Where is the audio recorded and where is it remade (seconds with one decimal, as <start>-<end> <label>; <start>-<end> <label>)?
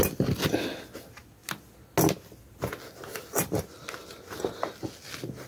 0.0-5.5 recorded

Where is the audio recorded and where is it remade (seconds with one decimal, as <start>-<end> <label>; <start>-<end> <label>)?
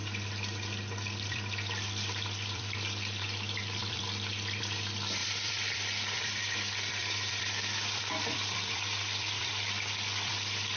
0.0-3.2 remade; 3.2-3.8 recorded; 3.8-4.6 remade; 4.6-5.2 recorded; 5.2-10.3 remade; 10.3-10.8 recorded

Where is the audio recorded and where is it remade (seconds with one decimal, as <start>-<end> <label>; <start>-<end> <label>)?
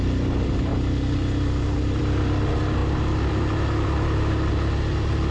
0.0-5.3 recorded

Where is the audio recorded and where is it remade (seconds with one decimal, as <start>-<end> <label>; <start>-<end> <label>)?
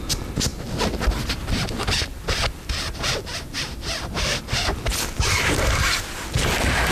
0.0-6.9 recorded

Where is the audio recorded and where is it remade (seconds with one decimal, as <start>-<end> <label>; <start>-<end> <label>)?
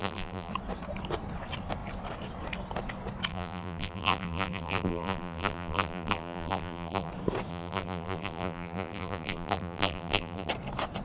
0.0-0.5 remade; 0.5-3.3 recorded; 3.3-7.1 remade; 7.1-7.5 recorded; 7.5-10.5 remade; 10.5-11.0 recorded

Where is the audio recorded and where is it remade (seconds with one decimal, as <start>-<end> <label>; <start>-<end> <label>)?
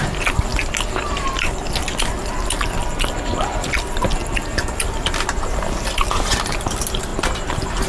0.0-7.9 recorded